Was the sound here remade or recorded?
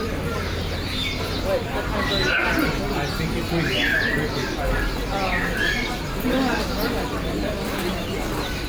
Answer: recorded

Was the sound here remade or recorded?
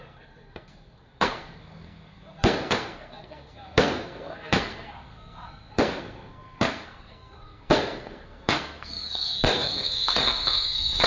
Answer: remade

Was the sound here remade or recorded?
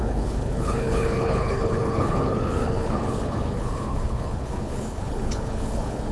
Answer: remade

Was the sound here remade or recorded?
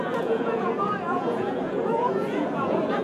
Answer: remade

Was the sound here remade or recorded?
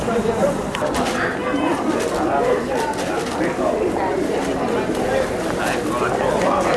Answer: recorded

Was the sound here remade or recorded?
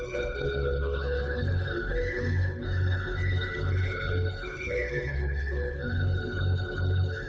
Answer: remade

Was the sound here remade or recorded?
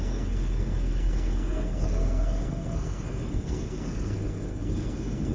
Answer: remade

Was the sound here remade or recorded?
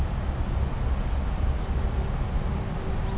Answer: recorded